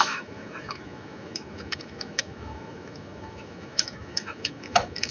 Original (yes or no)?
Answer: no